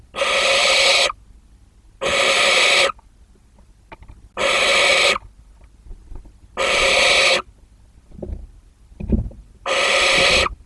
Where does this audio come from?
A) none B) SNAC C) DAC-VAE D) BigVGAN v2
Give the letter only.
A